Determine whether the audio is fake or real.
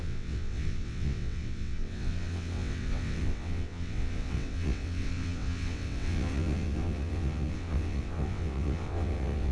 fake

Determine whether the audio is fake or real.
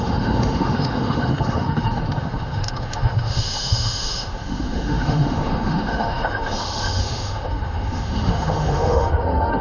fake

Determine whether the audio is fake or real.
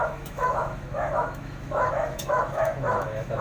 fake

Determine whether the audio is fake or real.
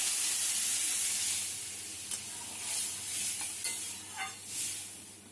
real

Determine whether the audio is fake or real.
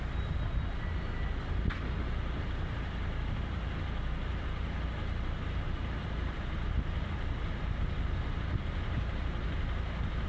real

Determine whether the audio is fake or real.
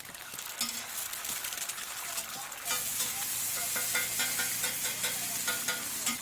real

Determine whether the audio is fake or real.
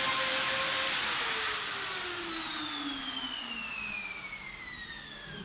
real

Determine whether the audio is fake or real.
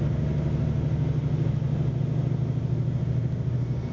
real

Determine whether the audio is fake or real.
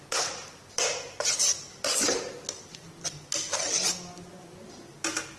real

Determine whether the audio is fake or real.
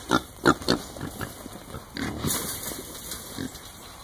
real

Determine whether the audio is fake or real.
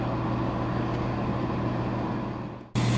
real